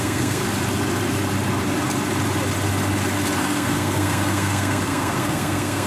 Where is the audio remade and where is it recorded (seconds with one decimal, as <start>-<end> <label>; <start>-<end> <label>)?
0.0-0.4 remade; 0.4-3.4 recorded; 3.4-5.9 remade

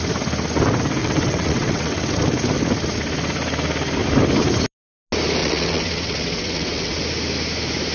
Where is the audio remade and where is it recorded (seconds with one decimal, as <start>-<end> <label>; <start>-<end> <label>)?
0.0-1.0 recorded; 1.0-2.1 remade; 2.1-5.4 recorded; 5.4-7.0 remade; 7.0-7.9 recorded

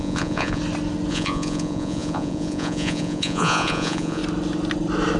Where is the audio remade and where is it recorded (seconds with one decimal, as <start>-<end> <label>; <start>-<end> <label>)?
0.0-0.6 remade; 0.6-1.1 recorded; 1.1-4.2 remade; 4.2-5.2 recorded

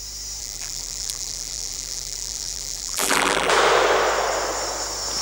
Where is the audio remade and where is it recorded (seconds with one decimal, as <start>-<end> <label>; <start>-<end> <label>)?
0.0-0.4 recorded; 0.4-3.5 remade; 3.5-5.2 recorded

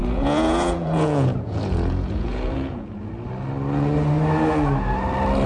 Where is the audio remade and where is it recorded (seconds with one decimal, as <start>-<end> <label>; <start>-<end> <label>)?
0.0-3.1 remade; 3.1-5.5 recorded

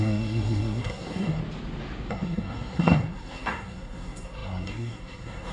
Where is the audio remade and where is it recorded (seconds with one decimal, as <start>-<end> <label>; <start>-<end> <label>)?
0.0-1.4 remade; 1.4-2.1 recorded; 2.1-5.5 remade